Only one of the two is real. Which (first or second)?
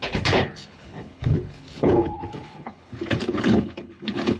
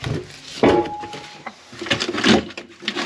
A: second